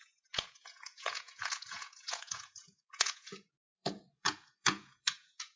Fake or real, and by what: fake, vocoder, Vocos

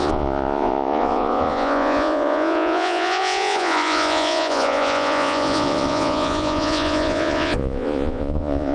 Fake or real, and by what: fake, vocoder, Vocos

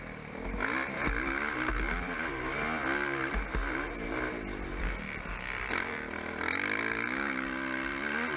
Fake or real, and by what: real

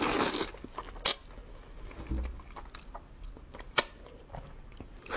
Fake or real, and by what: real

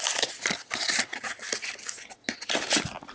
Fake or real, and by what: real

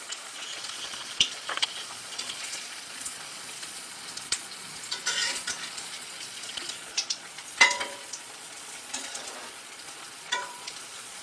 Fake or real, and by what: fake, vocoder, Vocos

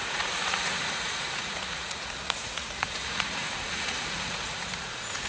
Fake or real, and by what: fake, vocoder, Vocos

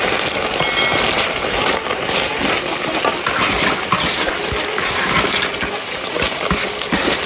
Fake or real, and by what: real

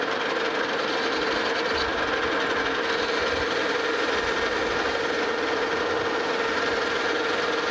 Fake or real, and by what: real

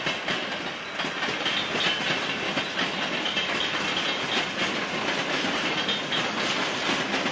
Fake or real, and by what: real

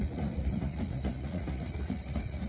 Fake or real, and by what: fake, vocoder, Vocos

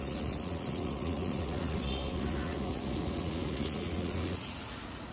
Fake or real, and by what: fake, vocoder, Vocos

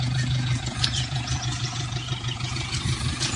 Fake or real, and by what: fake, vocoder, Vocos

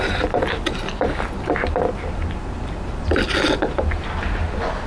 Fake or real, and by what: real